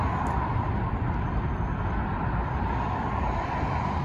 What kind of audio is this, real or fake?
fake